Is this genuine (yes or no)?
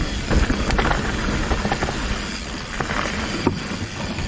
yes